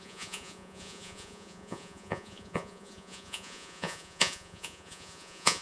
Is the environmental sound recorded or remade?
remade